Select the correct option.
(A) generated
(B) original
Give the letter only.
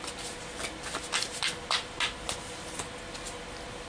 B